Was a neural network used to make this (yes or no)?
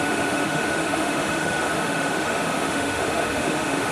yes